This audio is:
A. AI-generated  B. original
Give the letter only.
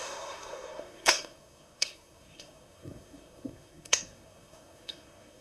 A